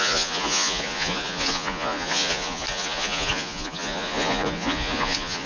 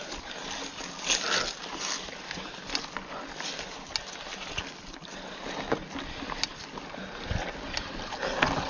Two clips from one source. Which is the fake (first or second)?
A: first